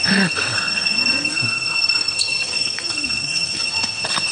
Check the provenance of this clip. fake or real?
fake